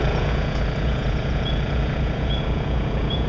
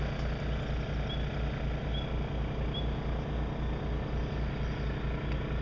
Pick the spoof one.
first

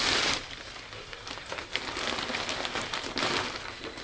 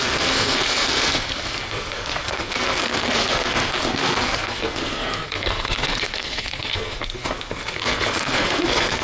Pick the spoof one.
second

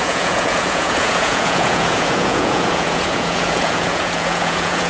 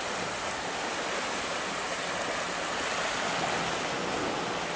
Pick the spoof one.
first